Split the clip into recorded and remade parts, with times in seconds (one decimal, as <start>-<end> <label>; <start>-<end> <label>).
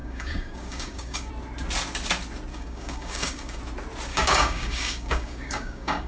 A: 0.0-1.3 remade; 1.3-2.5 recorded; 2.5-3.6 remade; 3.6-4.1 recorded; 4.1-6.1 remade